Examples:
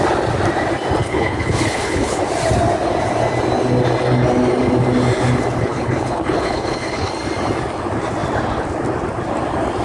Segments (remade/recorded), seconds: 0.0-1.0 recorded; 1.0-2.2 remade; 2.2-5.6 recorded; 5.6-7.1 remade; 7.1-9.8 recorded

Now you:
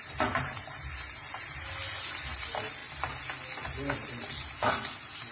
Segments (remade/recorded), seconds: 0.0-5.3 recorded

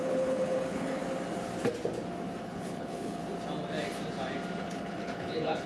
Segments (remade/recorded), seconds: 0.0-1.0 remade; 1.0-2.4 recorded; 2.4-3.2 remade; 3.2-4.6 recorded; 4.6-5.7 remade